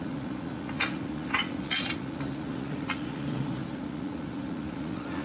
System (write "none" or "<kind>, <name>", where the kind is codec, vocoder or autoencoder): vocoder, Vocos